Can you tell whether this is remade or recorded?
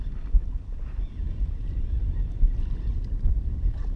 recorded